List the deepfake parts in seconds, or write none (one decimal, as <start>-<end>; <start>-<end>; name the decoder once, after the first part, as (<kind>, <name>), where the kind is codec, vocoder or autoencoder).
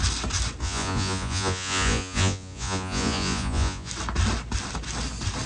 0.6-3.9 (vocoder, Vocos)